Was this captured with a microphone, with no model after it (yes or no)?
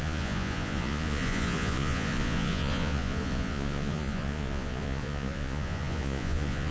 no